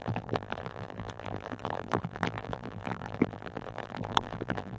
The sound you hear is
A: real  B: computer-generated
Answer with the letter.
B